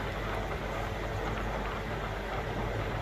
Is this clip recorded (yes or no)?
yes